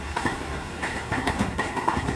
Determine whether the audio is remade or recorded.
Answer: remade